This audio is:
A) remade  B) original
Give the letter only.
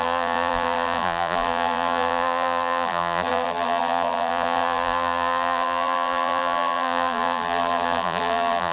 A